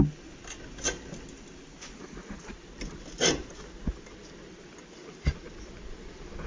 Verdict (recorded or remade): recorded